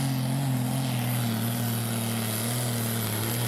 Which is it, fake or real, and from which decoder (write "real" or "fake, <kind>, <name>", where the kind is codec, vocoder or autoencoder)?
real